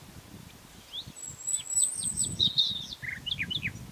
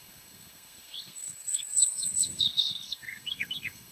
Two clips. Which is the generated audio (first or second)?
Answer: second